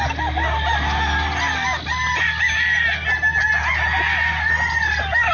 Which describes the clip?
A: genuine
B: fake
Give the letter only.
A